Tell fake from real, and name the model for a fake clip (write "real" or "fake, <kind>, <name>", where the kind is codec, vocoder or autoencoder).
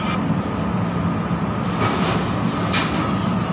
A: real